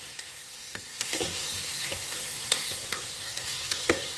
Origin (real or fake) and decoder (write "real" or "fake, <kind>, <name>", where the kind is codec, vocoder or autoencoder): fake, codec, SNAC